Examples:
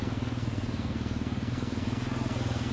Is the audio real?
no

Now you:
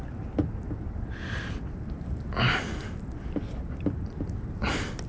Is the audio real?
yes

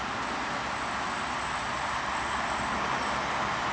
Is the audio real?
yes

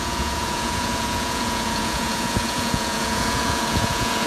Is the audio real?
no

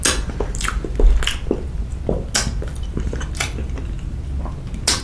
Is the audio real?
yes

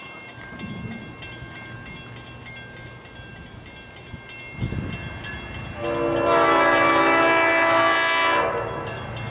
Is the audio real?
yes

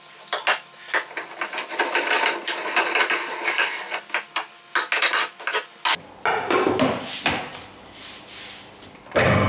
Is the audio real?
yes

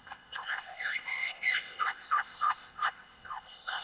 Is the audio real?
no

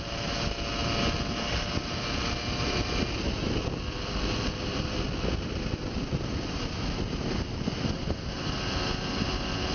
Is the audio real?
yes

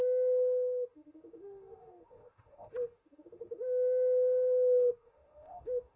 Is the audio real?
no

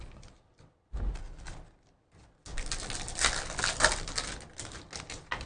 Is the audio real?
yes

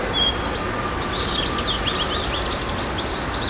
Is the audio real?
yes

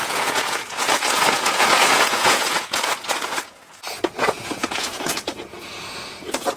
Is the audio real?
no